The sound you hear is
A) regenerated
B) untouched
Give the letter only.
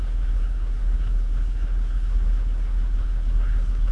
A